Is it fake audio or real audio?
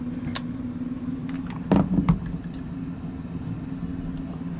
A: real